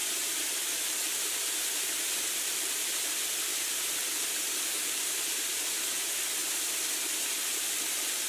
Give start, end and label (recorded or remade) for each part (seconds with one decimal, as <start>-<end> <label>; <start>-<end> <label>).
0.0-2.4 remade; 2.4-8.3 recorded